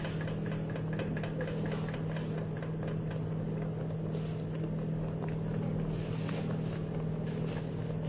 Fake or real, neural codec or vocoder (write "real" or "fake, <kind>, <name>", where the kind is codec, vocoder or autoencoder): real